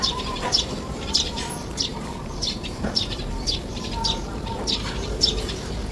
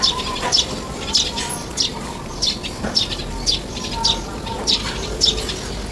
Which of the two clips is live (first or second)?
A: second